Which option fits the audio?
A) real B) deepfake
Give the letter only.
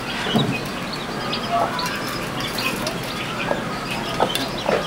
A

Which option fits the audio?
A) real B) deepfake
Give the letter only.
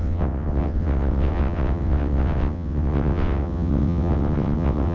B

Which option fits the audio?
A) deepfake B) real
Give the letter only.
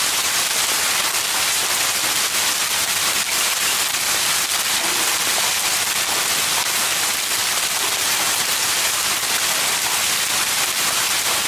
B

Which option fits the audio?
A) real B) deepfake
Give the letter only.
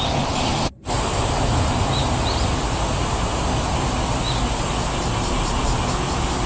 A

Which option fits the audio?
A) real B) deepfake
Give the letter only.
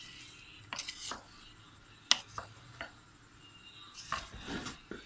A